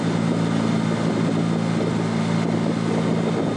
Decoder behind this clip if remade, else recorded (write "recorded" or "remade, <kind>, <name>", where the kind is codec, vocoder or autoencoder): recorded